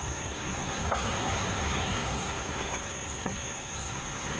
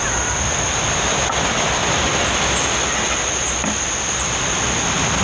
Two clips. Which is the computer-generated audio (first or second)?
first